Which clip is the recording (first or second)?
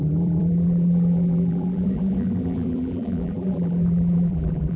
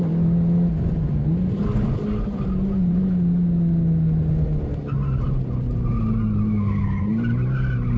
second